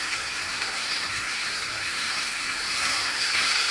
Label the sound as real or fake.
fake